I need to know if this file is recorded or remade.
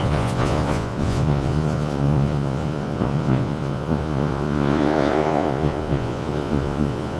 remade